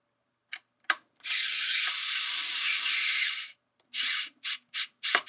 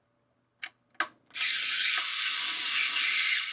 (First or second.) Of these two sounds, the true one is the second